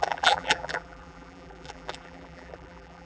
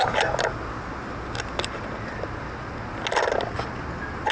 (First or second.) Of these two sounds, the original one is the second